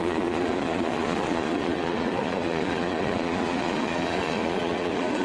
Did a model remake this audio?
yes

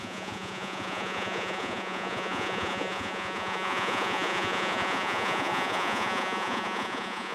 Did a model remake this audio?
yes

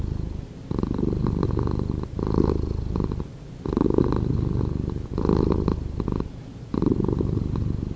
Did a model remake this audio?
no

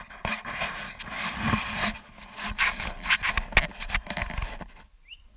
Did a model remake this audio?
no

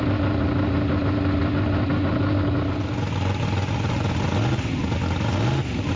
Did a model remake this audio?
no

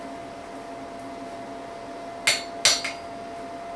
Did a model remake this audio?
no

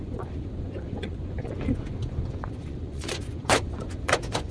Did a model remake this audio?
yes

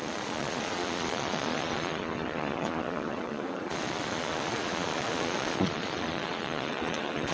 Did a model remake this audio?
yes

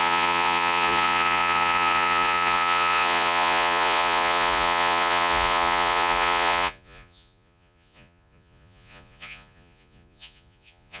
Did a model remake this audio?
yes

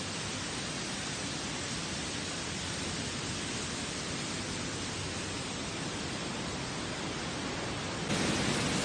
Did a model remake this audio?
no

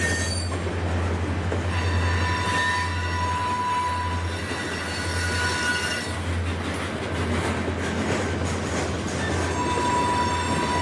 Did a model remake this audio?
no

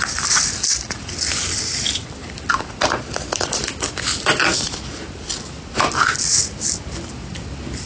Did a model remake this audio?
no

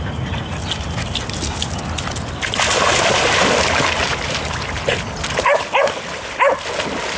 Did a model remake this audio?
no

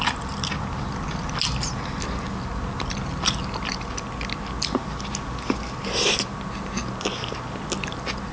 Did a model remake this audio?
no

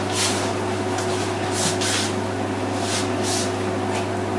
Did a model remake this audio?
no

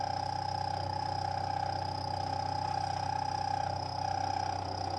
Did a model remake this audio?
no